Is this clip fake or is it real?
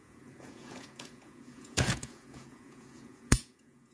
fake